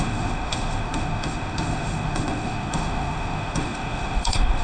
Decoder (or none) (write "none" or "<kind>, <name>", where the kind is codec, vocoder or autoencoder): autoencoder, DAC-VAE